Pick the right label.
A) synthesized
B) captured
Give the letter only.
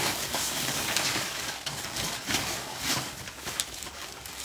A